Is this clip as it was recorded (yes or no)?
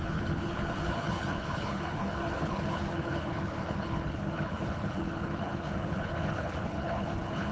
no